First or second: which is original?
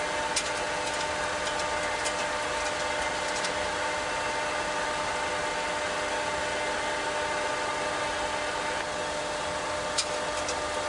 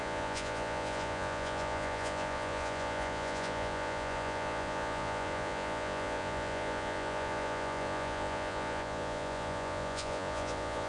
first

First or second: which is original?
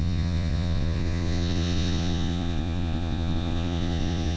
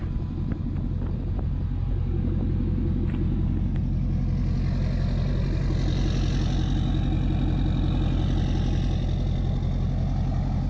second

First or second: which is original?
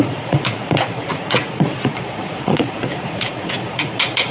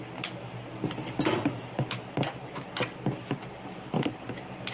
second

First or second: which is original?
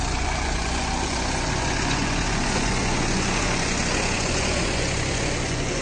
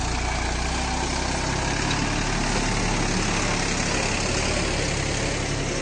second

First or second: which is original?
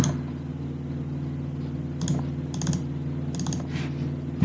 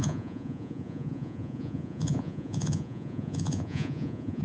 first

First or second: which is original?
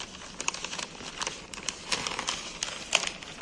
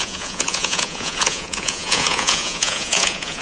first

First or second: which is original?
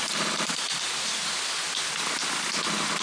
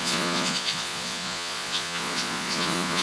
first